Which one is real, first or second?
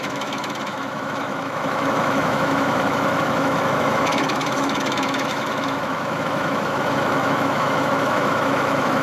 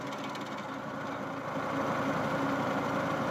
second